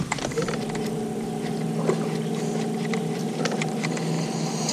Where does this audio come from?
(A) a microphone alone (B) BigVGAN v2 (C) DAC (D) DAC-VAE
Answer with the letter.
A